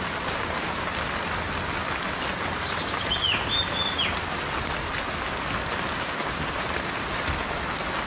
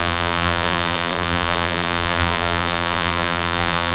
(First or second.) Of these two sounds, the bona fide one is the first